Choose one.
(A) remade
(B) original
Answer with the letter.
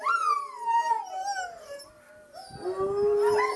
B